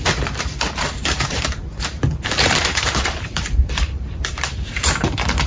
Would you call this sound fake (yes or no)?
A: yes